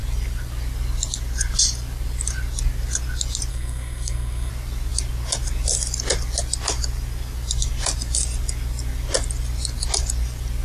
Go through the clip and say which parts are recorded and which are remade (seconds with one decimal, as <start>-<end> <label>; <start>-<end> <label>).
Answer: 0.0-3.5 recorded; 3.5-4.5 remade; 4.5-10.6 recorded